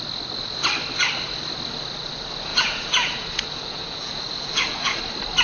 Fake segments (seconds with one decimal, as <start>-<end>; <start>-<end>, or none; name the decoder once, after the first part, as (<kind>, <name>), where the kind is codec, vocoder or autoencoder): 2.5-5.0 (vocoder, Vocos)